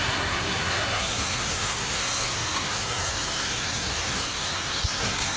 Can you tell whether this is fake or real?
fake